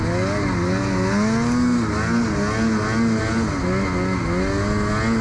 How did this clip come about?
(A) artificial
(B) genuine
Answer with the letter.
B